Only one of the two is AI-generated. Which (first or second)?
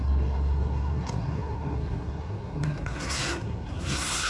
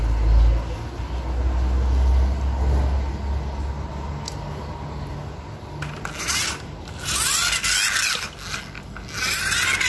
first